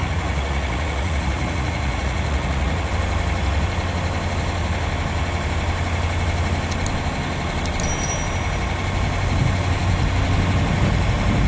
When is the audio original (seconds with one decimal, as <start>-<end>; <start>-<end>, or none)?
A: 2.9-11.5